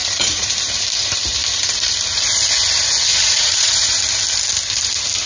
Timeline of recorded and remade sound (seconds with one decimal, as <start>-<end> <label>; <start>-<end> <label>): 0.0-0.5 remade; 0.5-3.1 recorded; 3.1-3.7 remade; 3.7-5.3 recorded